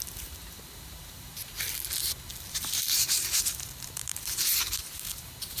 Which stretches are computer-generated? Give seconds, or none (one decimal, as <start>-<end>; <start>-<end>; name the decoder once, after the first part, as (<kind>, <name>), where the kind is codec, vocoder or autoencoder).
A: 0.0-1.3 (vocoder, BigVGAN v2); 2.5-5.6